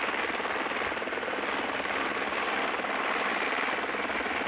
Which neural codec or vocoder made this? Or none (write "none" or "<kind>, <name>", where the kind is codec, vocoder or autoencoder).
none